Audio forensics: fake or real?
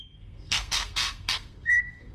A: fake